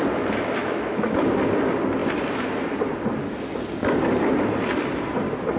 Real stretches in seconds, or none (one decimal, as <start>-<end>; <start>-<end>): 0.0-0.6; 1.2-5.6